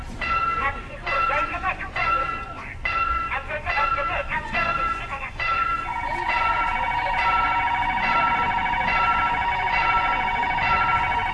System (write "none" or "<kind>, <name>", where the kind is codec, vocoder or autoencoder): vocoder, Vocos